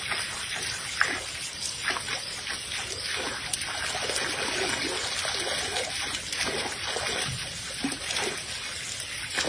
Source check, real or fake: real